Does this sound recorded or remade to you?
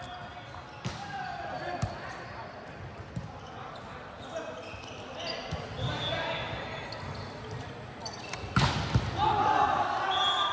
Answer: recorded